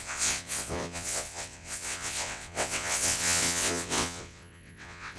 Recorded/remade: remade